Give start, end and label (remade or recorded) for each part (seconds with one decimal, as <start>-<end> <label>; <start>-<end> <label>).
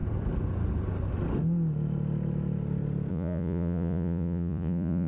0.0-3.1 recorded; 3.1-5.1 remade